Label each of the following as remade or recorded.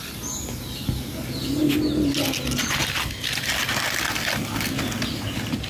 recorded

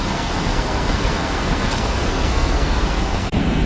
remade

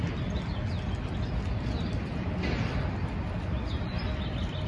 recorded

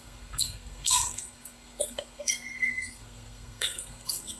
remade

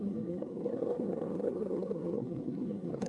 remade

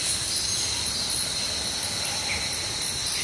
recorded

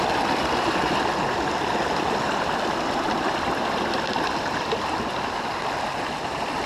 recorded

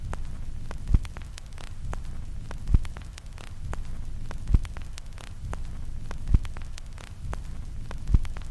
recorded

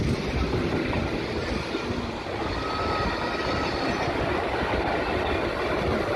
recorded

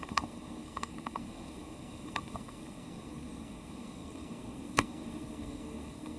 remade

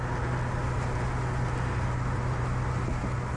recorded